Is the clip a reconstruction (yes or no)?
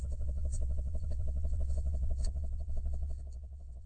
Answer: yes